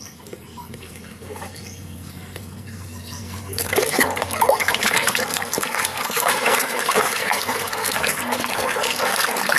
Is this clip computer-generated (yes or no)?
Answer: yes